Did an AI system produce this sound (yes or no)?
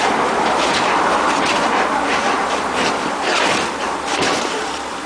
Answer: yes